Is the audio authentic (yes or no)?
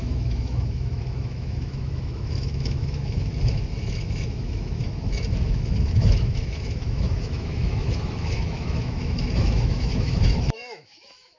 no